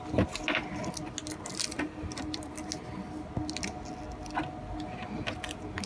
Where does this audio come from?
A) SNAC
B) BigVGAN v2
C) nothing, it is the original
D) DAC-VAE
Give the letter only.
C